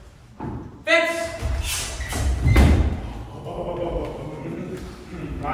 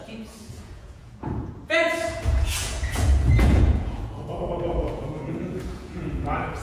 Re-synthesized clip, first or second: second